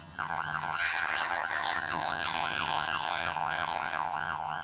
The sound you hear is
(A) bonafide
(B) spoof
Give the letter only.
B